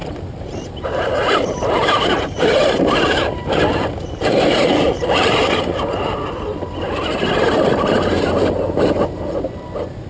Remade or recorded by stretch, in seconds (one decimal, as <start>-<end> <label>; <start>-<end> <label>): 0.0-3.0 remade; 3.0-10.1 recorded